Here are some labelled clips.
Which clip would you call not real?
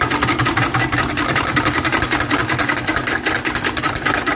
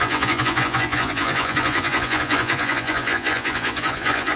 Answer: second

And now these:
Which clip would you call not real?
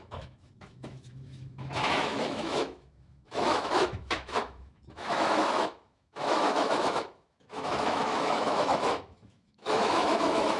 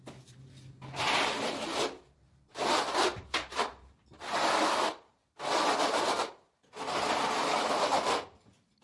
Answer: first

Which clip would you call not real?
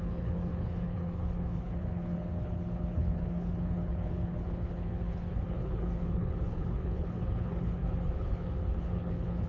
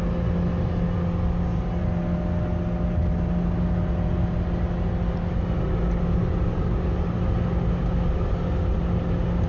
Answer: first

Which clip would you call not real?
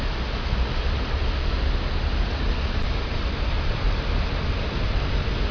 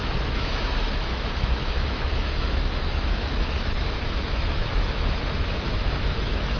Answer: second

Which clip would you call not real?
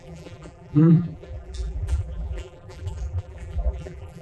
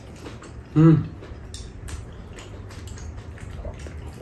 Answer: first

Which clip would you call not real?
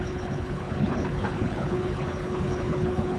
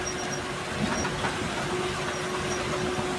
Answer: first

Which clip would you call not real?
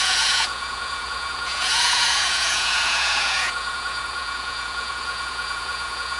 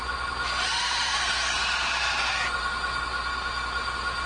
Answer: first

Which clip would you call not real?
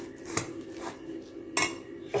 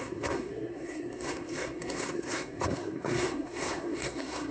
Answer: second